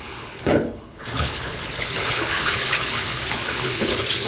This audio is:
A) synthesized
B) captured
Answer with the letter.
A